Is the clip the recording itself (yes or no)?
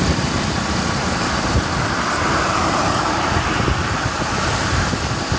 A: no